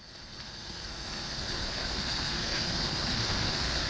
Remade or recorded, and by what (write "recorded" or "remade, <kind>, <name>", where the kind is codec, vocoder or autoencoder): remade, codec, SNAC